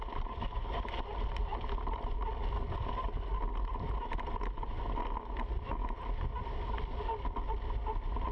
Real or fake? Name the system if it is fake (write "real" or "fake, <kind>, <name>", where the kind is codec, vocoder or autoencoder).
real